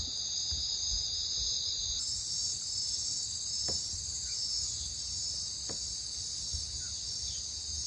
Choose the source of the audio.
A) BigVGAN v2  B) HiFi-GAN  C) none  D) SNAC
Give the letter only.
A